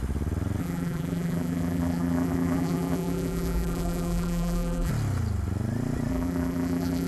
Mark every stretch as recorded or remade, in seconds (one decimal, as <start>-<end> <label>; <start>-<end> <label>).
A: 0.0-0.6 recorded; 0.6-4.9 remade; 4.9-6.1 recorded; 6.1-7.1 remade